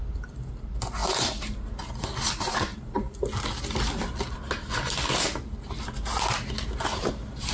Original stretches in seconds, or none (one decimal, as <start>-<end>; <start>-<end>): 0.0-7.5